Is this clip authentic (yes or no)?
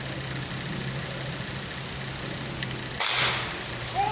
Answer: yes